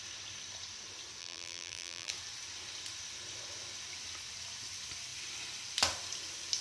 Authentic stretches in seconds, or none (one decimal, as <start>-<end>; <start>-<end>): 0.0-1.2; 2.1-6.6